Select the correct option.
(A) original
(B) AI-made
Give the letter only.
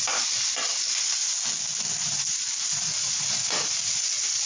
A